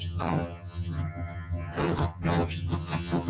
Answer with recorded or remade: remade